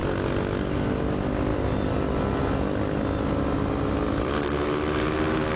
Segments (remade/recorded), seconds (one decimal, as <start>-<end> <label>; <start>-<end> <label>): 0.0-5.6 recorded